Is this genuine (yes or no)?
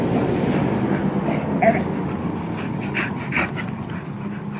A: yes